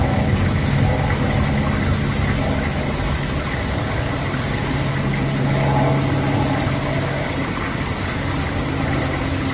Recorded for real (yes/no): yes